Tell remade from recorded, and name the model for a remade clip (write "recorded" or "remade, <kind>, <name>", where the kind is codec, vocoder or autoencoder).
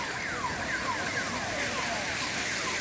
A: recorded